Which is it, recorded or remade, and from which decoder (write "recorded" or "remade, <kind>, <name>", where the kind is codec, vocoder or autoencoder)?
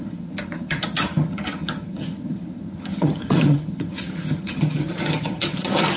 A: remade, vocoder, HiFi-GAN